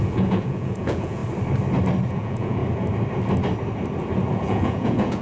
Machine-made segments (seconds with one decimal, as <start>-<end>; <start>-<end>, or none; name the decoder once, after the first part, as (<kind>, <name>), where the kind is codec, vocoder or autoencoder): 0.0-1.2 (vocoder, Vocos); 2.1-2.6; 4.3-5.2